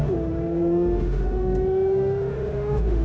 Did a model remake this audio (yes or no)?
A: yes